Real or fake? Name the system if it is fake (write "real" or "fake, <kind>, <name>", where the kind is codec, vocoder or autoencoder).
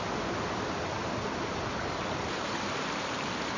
real